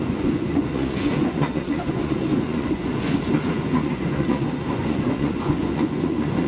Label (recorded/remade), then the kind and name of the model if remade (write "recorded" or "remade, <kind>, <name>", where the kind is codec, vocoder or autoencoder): remade, vocoder, Vocos